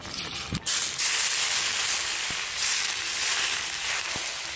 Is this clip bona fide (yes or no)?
yes